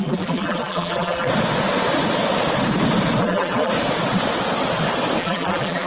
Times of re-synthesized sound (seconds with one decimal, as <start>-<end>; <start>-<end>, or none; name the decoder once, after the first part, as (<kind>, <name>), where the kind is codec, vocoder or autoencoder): 0.0-1.3 (vocoder, BigVGAN v2); 3.2-3.7; 5.2-5.9